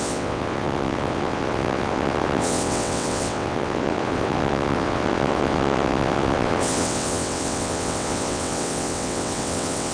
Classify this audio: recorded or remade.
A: remade